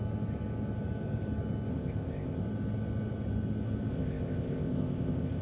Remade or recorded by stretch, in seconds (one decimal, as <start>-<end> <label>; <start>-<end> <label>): 0.0-1.7 recorded; 1.7-2.4 remade; 2.4-3.9 recorded; 3.9-5.4 remade